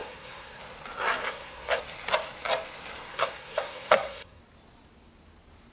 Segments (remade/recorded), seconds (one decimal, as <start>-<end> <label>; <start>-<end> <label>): 0.0-0.6 remade; 0.6-1.2 recorded; 1.2-1.8 remade; 1.8-3.1 recorded; 3.1-4.4 remade; 4.4-5.7 recorded